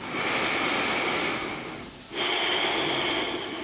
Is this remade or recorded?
recorded